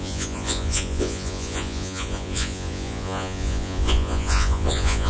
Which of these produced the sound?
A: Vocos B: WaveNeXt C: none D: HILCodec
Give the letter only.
A